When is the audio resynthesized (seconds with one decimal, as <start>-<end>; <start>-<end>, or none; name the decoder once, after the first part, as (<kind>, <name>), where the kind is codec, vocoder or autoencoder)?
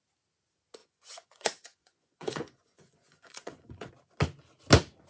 0.8-3.9 (vocoder, Vocos)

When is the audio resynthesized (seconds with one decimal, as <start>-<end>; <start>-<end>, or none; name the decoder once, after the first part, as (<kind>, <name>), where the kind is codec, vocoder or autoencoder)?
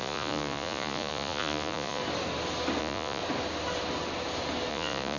0.0-2.0 (vocoder, Vocos); 2.8-3.2; 4.7-5.2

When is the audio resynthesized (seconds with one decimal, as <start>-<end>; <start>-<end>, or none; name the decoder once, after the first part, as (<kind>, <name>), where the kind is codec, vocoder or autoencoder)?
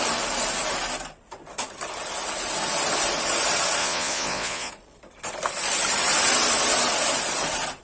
3.8-4.7 (vocoder, Vocos)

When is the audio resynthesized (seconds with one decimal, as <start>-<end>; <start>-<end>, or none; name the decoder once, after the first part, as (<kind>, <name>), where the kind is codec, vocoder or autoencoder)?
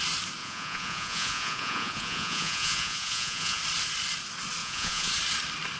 0.4-3.6 (vocoder, Vocos); 4.6-5.1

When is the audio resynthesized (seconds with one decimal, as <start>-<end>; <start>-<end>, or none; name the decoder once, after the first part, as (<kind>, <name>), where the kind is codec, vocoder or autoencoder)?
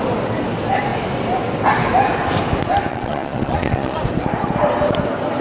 2.9-4.0 (vocoder, Vocos)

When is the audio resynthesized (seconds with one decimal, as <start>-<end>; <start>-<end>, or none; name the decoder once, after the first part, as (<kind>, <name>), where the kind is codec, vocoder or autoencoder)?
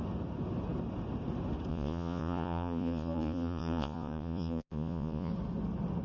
1.7-5.3 (vocoder, Vocos)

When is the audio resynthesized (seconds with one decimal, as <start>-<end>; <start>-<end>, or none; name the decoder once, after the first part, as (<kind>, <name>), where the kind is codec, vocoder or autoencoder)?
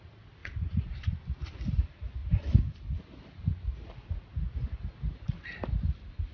0.4-1.2 (vocoder, Vocos)